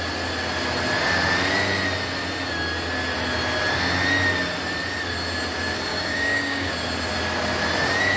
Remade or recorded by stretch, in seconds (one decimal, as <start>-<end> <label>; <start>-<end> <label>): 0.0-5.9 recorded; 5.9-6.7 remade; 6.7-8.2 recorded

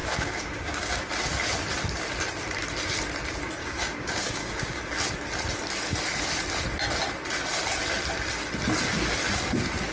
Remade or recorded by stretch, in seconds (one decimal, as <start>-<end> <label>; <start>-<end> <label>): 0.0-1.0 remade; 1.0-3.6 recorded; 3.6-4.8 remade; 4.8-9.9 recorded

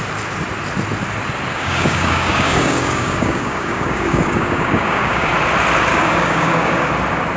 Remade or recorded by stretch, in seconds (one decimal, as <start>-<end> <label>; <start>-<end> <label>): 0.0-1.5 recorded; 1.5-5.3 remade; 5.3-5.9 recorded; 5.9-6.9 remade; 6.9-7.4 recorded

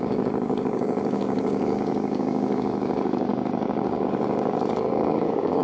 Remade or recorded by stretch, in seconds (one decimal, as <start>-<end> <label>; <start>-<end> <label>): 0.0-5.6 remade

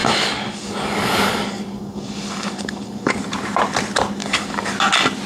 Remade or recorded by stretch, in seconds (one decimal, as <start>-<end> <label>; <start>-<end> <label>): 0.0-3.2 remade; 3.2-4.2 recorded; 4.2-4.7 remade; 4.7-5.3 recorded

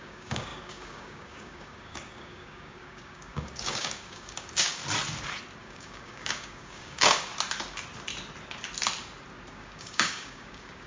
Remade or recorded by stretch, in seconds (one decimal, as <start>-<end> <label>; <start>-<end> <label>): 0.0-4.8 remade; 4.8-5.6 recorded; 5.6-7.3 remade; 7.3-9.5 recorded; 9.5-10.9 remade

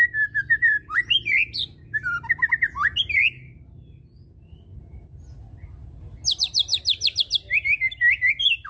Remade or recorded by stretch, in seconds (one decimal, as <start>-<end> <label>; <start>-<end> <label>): 0.0-8.7 recorded

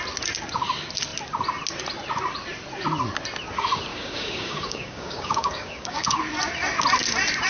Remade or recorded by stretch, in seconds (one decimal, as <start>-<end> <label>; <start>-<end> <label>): 0.0-3.9 recorded; 3.9-6.2 remade; 6.2-7.5 recorded